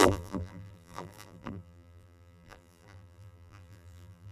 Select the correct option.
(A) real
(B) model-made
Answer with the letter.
B